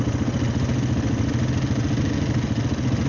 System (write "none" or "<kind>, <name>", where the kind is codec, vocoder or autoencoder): none